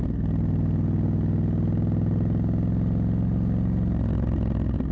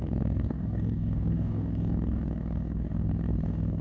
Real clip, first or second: first